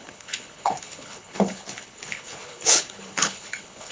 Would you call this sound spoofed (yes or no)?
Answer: yes